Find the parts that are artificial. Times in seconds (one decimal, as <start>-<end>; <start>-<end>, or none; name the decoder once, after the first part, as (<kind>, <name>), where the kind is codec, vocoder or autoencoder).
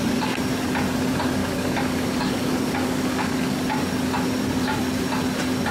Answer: 1.4-3.6 (codec, DAC)